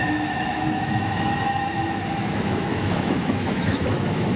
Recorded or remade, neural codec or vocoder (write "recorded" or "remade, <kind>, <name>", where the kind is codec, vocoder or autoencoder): remade, autoencoder, DAC-VAE